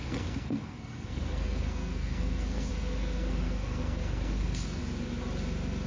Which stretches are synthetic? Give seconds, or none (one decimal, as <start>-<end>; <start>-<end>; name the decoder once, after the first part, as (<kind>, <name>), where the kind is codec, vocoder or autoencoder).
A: 0.0-4.8 (codec, SNAC)